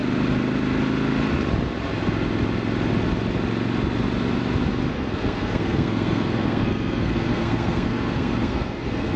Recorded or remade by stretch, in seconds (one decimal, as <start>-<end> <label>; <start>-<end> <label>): 0.0-4.9 recorded; 4.9-9.2 remade